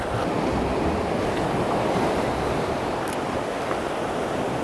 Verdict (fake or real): real